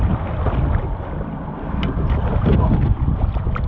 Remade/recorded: recorded